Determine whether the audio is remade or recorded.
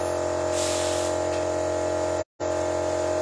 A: recorded